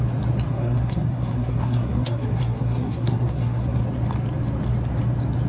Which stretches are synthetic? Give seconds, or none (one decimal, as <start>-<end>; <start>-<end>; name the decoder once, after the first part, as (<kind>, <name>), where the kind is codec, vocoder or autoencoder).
0.5-3.8 (codec, SNAC)